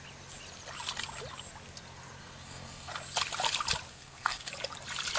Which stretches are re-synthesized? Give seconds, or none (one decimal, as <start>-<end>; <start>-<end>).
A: 2.2-2.9; 3.9-4.5